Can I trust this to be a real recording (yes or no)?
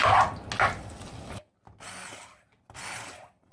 yes